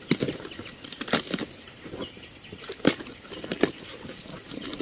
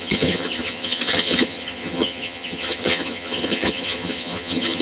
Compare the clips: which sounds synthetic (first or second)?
second